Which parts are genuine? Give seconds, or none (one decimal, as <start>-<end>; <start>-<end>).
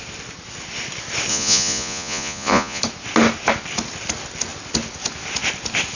0.0-1.3; 2.8-6.0